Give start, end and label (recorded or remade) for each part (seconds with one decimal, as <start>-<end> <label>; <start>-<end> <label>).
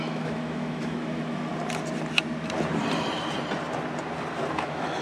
0.0-1.5 remade; 1.5-4.5 recorded; 4.5-5.0 remade